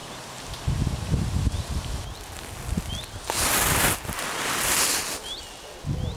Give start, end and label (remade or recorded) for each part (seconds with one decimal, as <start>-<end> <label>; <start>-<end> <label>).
0.0-6.2 recorded